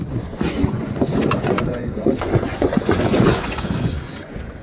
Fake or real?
fake